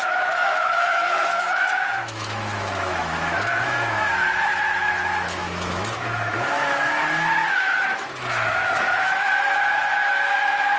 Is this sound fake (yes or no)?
yes